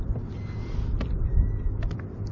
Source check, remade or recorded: remade